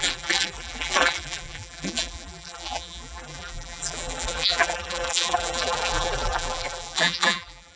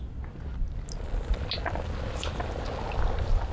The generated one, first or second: first